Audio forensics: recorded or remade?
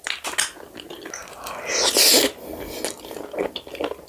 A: recorded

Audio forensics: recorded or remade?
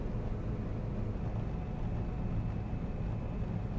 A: recorded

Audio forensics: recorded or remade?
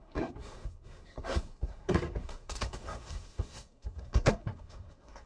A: remade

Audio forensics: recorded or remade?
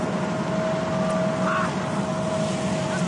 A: recorded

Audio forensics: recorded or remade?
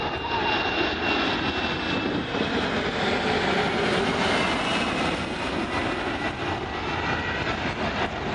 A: recorded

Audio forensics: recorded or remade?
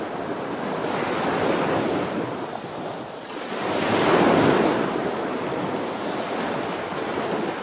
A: recorded